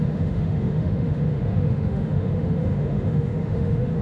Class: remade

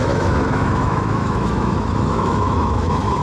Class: remade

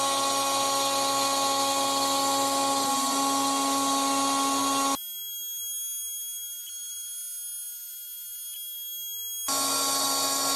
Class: recorded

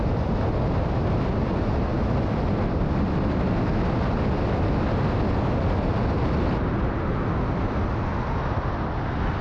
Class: recorded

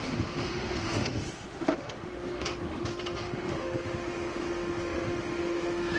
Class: remade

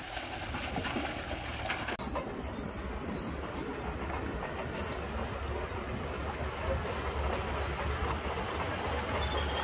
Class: recorded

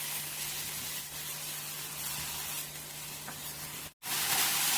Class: recorded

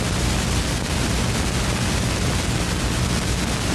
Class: recorded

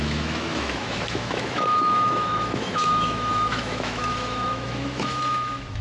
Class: remade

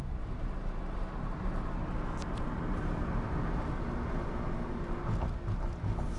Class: recorded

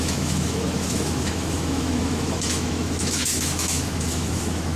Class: remade